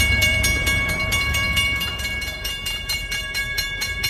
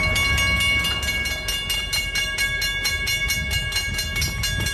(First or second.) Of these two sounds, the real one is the second